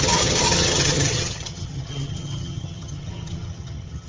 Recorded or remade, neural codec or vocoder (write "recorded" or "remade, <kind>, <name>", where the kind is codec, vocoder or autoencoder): remade, vocoder, HiFi-GAN